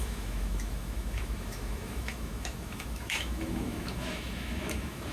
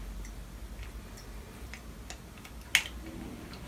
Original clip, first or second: second